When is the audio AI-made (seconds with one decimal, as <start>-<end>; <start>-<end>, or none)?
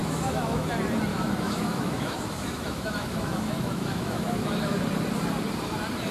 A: 0.0-0.7; 1.1-4.8